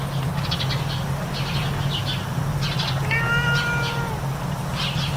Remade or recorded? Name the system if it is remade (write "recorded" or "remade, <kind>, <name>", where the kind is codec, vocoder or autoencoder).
recorded